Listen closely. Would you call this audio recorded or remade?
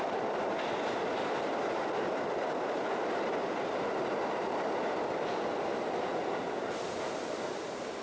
remade